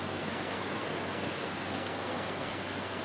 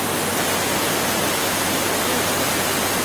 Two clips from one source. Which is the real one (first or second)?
second